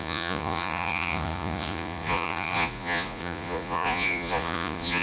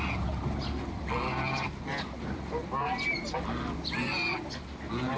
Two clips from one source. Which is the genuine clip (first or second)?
second